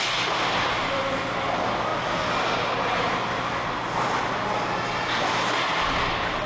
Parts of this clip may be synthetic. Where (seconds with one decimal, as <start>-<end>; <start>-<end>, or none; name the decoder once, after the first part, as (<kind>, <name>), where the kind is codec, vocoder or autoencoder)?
none

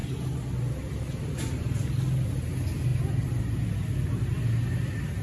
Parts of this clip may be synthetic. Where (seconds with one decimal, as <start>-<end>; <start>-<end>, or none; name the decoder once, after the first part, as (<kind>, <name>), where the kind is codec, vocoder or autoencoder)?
none

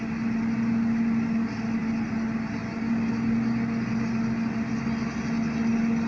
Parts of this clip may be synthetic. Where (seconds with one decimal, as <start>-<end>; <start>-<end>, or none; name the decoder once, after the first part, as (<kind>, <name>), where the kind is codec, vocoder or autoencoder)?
none

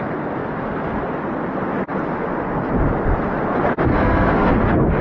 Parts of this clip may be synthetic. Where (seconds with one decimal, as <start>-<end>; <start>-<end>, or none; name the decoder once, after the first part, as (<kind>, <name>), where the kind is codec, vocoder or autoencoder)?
3.9-4.5 (codec, SNAC)

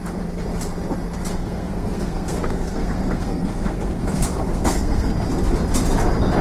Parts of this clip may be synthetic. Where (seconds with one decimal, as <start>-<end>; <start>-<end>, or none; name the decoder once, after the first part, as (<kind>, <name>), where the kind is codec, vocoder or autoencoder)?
1.3-5.1 (codec, SNAC)

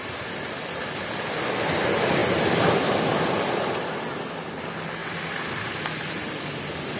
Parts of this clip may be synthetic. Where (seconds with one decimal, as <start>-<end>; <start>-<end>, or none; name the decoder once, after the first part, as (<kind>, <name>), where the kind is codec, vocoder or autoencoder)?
none

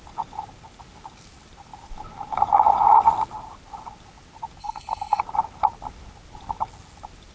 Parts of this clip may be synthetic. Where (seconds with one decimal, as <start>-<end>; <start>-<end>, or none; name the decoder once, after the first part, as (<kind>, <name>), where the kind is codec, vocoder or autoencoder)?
4.6-5.2 (codec, SNAC)